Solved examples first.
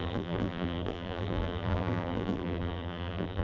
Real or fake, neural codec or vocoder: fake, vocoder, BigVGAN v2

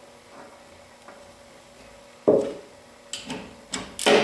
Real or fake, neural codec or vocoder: real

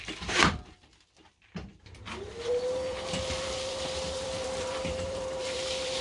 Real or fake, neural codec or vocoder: fake, vocoder, BigVGAN v2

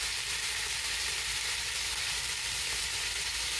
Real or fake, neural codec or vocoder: fake, vocoder, BigVGAN v2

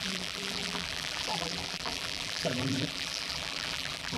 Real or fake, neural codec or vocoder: fake, vocoder, BigVGAN v2